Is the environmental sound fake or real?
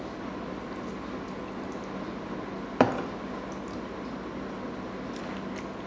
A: real